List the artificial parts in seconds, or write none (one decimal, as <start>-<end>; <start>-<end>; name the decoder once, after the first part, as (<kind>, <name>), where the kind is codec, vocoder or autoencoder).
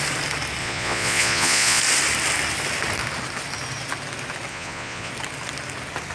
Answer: 0.6-1.8 (vocoder, Vocos); 4.5-5.1